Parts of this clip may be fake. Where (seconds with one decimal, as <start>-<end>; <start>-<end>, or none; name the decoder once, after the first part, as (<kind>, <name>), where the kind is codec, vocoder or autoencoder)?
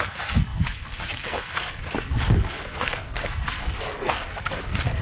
0.0-5.0 (codec, SNAC)